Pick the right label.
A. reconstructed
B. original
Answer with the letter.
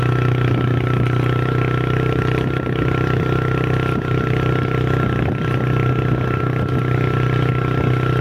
B